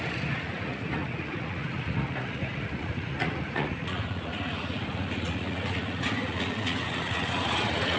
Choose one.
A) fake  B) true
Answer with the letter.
A